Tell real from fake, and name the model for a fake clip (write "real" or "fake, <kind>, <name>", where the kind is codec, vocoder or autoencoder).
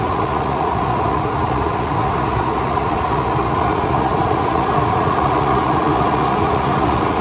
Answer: fake, vocoder, Vocos